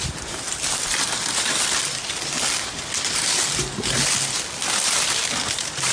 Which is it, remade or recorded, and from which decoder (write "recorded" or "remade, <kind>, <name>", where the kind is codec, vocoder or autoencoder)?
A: recorded